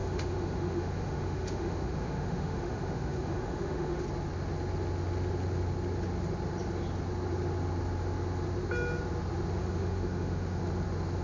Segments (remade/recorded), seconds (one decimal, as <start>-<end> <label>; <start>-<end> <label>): 0.0-4.0 remade; 4.0-9.6 recorded; 9.6-10.6 remade; 10.6-11.2 recorded